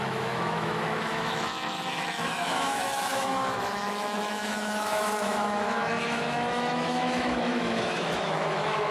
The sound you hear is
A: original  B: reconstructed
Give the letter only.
B